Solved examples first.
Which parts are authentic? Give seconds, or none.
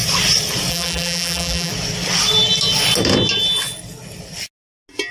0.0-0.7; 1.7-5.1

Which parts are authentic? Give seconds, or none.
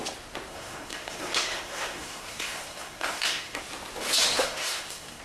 0.0-0.5; 3.6-4.3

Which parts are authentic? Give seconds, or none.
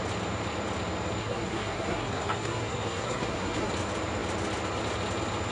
0.0-1.2; 3.7-5.5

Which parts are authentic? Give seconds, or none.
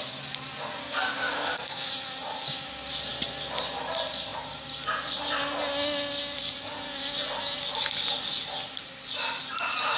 0.0-0.8; 1.9-10.0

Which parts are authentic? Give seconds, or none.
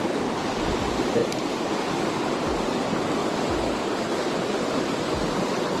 0.0-1.2; 1.7-5.8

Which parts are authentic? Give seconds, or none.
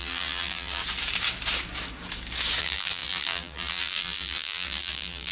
0.8-2.6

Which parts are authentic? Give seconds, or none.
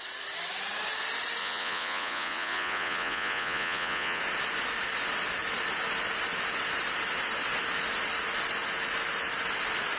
0.0-1.4; 4.2-10.0